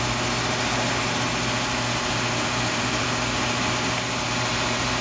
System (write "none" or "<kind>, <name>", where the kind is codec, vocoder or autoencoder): none